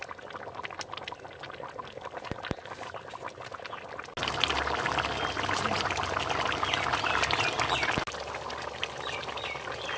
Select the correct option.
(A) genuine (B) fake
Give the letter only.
A